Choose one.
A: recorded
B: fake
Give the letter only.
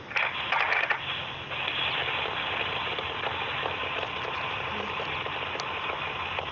A